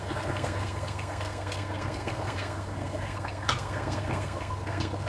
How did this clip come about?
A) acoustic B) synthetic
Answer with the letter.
B